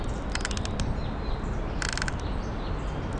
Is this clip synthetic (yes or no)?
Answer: no